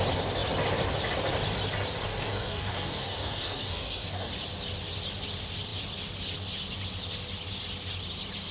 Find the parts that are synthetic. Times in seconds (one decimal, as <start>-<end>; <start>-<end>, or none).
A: 2.1-4.3